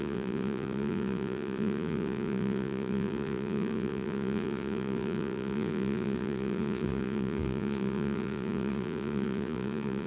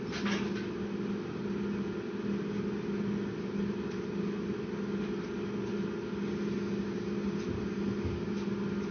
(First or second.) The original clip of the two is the second